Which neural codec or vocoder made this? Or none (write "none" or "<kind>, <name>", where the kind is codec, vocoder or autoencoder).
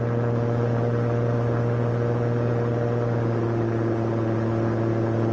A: none